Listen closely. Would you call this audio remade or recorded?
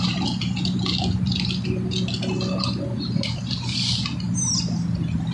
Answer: recorded